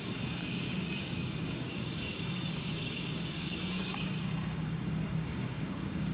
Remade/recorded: remade